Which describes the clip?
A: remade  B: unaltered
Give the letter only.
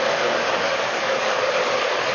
A